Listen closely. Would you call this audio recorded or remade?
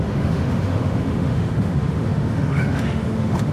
remade